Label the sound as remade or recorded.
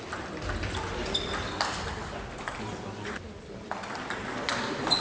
recorded